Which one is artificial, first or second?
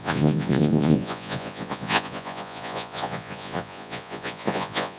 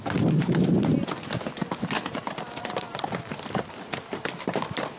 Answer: first